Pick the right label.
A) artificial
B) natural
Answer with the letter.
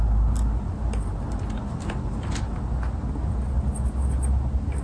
B